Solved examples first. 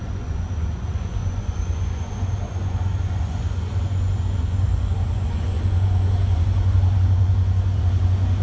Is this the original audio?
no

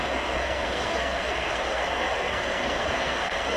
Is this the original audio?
no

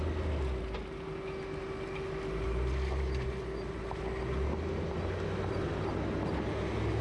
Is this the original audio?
yes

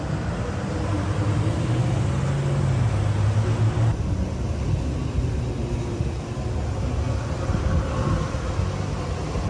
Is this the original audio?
yes